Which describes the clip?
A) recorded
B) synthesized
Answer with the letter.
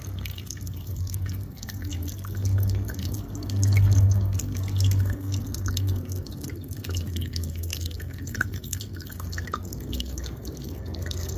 B